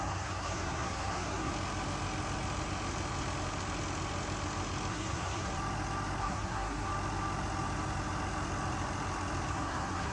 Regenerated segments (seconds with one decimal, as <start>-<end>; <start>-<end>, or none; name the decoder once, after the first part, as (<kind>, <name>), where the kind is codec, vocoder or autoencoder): 0.0-1.5 (codec, SNAC); 4.9-5.5; 6.2-6.9; 9.5-10.1